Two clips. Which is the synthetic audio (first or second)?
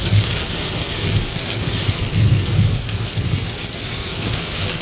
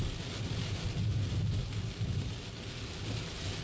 first